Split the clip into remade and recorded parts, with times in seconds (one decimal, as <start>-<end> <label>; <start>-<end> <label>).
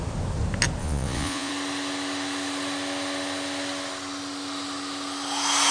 0.0-0.8 recorded; 0.8-1.5 remade; 1.5-5.7 recorded